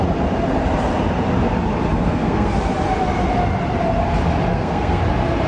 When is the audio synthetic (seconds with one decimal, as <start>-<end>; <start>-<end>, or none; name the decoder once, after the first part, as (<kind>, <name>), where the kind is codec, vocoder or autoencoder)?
1.9-2.5 (codec, SNAC); 4.5-5.0

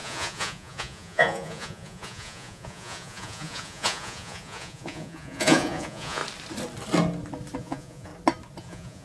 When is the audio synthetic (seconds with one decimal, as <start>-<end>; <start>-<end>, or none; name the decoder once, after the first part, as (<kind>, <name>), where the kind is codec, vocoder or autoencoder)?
0.0-6.2 (vocoder, Vocos); 7.6-8.1; 8.6-9.0

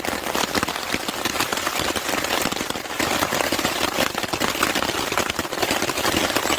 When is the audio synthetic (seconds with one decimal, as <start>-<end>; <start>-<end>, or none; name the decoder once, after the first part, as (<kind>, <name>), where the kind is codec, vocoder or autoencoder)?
none

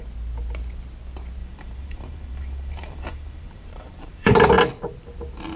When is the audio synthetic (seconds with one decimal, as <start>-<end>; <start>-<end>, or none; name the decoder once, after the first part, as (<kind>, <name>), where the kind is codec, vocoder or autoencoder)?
1.4-4.3 (vocoder, BigVGAN v2)

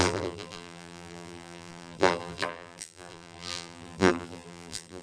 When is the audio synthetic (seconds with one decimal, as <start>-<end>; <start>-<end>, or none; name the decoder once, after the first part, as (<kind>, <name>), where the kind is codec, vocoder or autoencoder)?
0.0-5.0 (vocoder, BigVGAN v2)